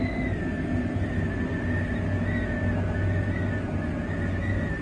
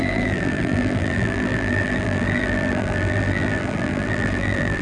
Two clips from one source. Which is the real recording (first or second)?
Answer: first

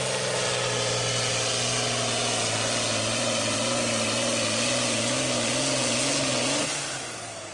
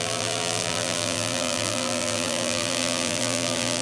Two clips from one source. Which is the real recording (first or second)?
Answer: first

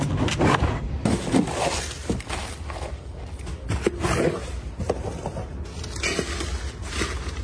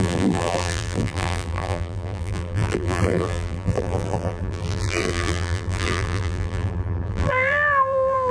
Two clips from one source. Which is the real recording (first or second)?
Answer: first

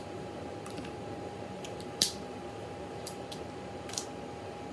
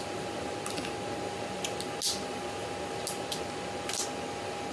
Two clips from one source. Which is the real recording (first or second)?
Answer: second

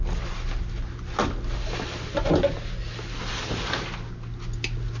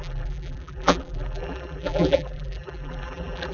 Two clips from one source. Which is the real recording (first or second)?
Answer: first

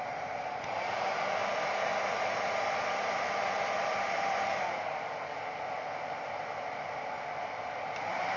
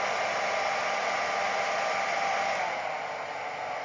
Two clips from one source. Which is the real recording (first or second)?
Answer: second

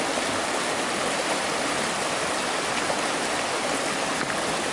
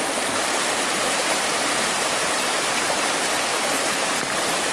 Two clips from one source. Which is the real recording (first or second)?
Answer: first